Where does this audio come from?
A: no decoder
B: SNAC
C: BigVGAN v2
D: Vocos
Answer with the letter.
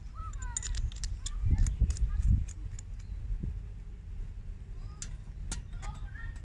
A